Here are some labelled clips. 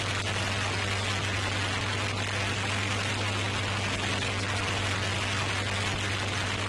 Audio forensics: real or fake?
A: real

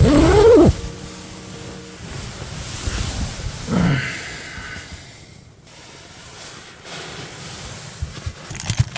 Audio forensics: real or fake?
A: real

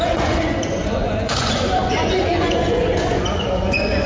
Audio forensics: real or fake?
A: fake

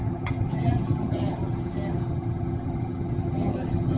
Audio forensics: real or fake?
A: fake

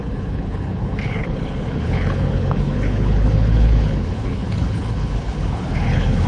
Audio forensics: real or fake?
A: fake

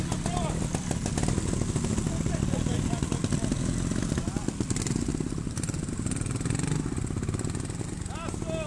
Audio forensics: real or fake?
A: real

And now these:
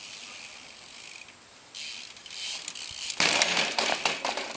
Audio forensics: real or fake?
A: real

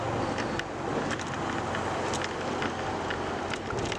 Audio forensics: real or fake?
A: real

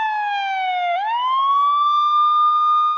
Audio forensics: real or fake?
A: real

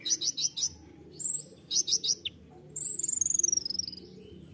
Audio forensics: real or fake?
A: real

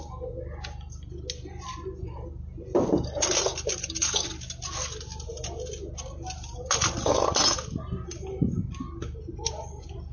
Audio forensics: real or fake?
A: real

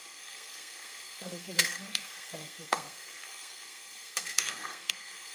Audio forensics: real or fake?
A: fake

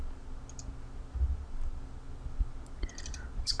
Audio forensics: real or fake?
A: real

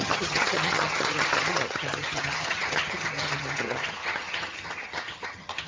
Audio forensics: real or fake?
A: fake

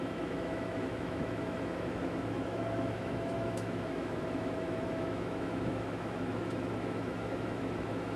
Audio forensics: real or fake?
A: fake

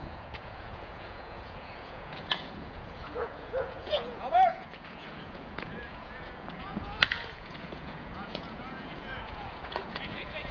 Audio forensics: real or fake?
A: fake